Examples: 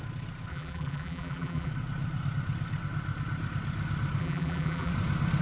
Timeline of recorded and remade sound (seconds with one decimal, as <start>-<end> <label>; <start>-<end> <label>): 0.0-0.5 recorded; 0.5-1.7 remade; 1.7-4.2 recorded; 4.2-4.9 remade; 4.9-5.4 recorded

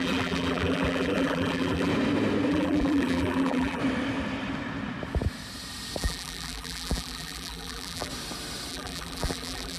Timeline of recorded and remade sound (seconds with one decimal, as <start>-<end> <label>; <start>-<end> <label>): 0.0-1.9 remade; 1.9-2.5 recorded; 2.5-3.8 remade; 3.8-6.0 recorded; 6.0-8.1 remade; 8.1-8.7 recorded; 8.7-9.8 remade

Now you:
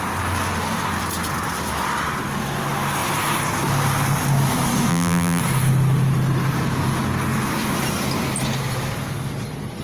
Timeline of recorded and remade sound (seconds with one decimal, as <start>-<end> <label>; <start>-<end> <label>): 0.0-4.9 recorded; 4.9-5.4 remade; 5.4-9.8 recorded

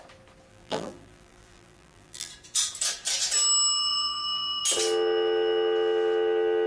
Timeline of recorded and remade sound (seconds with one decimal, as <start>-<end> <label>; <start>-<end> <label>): 0.0-0.5 recorded; 0.5-2.3 remade; 2.3-3.9 recorded; 3.9-4.6 remade; 4.6-6.7 recorded

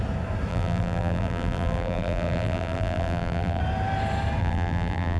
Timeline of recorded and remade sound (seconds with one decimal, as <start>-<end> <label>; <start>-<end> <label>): 0.0-0.5 recorded; 0.5-3.6 remade; 3.6-4.4 recorded; 4.4-5.2 remade

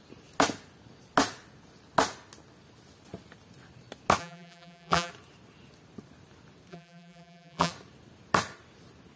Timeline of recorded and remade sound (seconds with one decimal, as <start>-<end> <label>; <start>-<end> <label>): 0.0-4.2 recorded; 4.2-5.1 remade; 5.1-6.7 recorded; 6.7-7.7 remade; 7.7-9.2 recorded

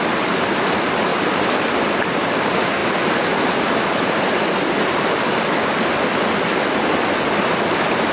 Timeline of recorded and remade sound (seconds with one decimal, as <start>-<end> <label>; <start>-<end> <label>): 0.0-1.1 remade; 1.1-1.9 recorded; 1.9-2.8 remade; 2.8-8.1 recorded

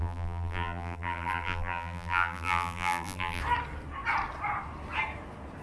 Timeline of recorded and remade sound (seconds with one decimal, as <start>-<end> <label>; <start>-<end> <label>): 0.0-3.4 remade; 3.4-5.6 recorded